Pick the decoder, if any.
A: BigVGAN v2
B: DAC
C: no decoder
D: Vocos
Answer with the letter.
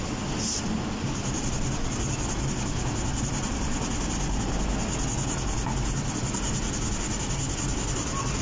C